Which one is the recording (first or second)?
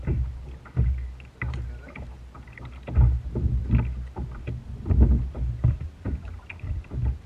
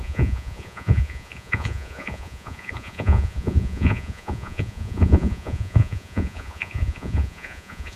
first